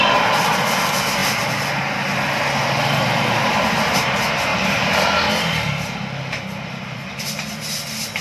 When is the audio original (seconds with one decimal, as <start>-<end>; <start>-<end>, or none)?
0.0-3.4; 4.1-4.5; 5.3-5.7; 7.2-8.2

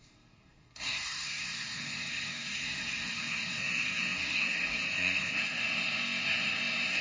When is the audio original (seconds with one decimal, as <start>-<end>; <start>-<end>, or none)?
none

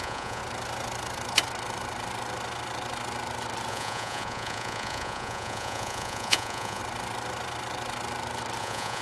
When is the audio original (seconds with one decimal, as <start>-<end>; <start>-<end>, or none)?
0.4-3.7; 6.8-8.6

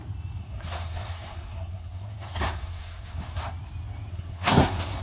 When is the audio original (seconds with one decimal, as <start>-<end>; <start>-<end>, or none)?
0.0-0.4; 3.4-4.1